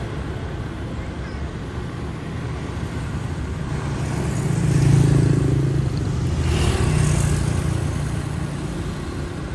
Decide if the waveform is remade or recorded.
recorded